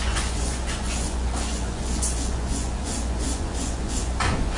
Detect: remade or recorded remade